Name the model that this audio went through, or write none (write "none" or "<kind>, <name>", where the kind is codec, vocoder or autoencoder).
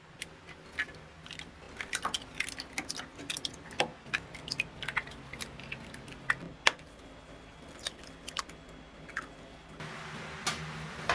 none